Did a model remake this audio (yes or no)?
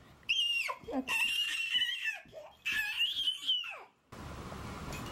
no